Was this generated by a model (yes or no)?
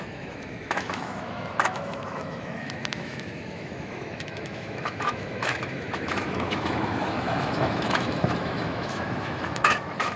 yes